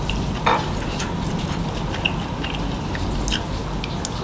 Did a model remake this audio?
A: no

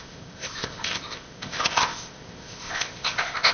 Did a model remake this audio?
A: yes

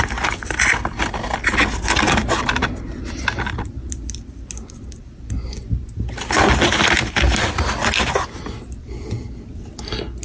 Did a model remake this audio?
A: no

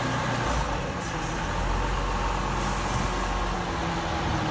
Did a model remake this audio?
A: no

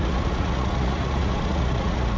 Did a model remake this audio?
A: yes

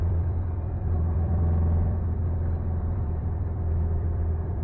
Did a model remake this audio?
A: yes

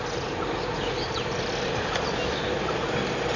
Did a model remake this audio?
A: no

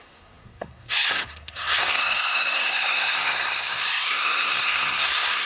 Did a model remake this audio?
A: yes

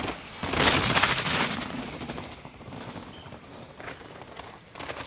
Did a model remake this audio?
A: no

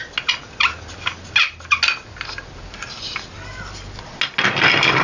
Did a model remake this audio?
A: no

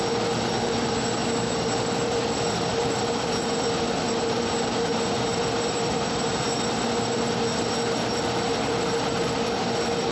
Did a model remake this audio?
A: no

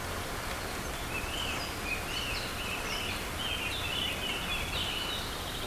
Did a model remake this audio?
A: no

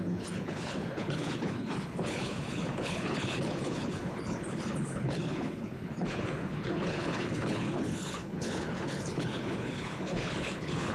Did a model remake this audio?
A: yes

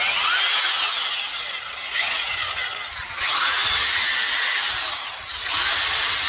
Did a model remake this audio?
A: no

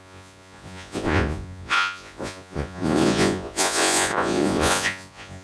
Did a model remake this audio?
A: yes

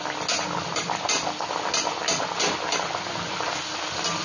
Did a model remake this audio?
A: no